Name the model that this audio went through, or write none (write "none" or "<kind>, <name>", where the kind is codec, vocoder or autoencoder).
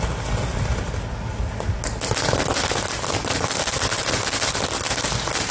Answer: none